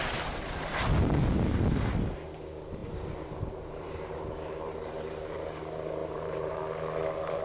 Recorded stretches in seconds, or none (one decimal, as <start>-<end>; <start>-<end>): 0.0-2.8; 5.6-6.0; 6.6-7.4